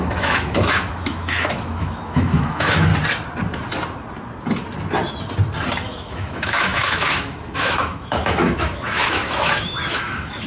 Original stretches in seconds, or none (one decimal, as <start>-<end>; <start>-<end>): 2.9-5.8